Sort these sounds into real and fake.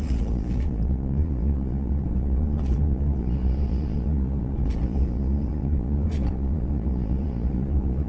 fake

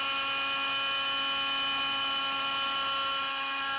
real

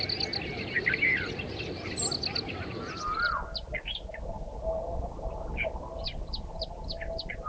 real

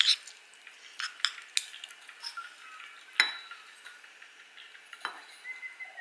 real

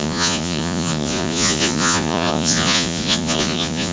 fake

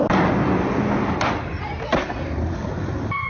real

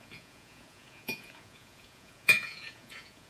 fake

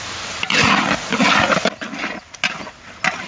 real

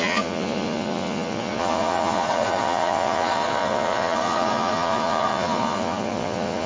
fake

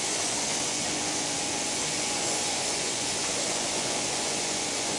fake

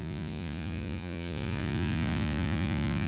fake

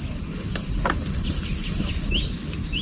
real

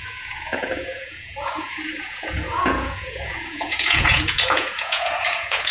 fake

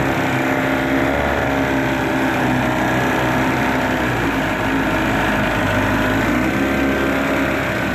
real